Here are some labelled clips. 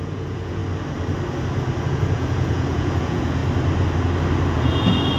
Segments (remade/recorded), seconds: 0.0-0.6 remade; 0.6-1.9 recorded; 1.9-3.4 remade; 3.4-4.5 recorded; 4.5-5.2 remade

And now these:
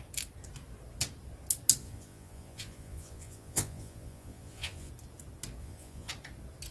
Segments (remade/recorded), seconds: 0.0-1.8 recorded; 1.8-4.9 remade; 4.9-5.6 recorded; 5.6-6.1 remade; 6.1-6.7 recorded

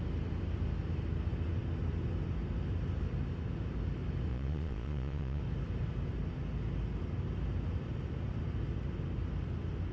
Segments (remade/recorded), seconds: 0.0-4.3 recorded; 4.3-5.4 remade; 5.4-9.9 recorded